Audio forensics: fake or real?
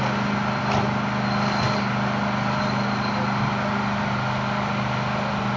real